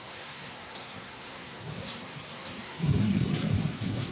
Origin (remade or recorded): remade